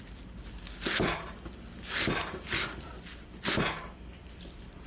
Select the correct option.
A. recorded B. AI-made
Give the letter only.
A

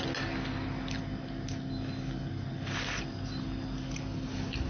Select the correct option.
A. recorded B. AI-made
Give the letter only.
A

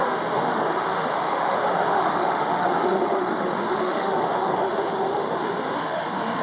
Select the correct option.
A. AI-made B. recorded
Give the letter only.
A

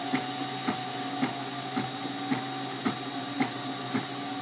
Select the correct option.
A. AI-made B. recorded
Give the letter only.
B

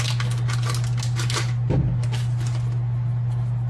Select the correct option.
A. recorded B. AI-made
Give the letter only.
A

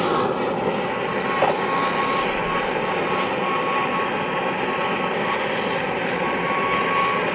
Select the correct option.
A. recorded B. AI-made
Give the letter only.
A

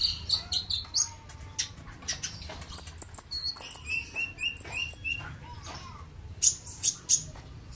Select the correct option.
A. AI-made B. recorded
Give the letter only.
B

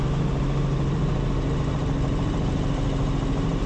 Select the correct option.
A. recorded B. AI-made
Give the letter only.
A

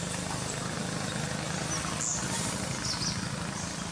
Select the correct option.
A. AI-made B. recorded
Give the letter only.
B